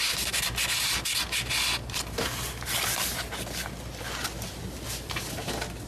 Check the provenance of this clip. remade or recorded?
recorded